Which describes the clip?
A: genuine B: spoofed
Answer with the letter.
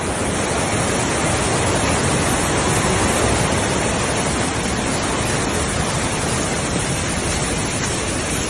A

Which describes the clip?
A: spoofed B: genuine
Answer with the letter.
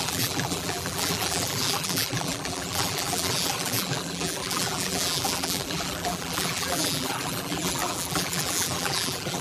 A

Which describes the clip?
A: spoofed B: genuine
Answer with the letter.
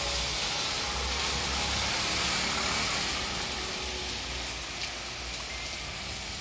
B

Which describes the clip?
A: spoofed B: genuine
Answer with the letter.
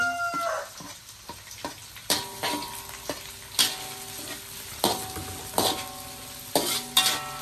B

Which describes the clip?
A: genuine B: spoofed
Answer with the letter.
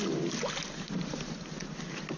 A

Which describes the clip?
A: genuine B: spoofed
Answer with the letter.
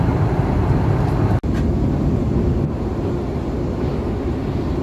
A